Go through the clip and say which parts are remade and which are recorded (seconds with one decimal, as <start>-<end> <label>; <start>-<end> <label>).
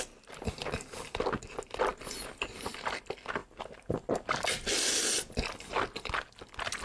0.0-6.8 recorded